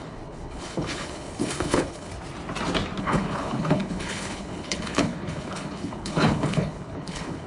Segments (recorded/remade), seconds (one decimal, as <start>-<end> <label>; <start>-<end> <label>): 0.0-2.1 remade; 2.1-3.0 recorded; 3.0-7.5 remade